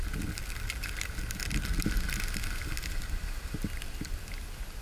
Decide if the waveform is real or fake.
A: real